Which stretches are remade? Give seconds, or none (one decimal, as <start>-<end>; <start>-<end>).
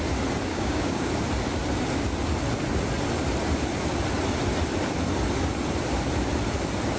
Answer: 0.5-1.1